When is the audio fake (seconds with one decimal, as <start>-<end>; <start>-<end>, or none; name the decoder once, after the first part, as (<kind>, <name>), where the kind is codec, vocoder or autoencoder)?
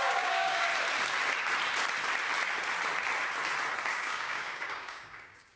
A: 0.0-0.7 (codec, DAC); 3.9-5.6